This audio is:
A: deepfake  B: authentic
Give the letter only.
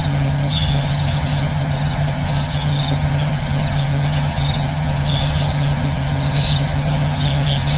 A